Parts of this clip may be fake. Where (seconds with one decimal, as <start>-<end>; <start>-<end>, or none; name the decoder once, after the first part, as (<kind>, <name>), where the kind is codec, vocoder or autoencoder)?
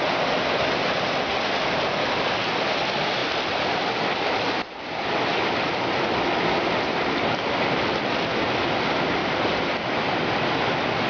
none